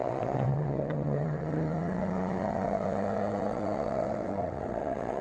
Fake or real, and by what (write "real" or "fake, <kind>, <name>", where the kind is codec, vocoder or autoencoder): fake, vocoder, WaveNeXt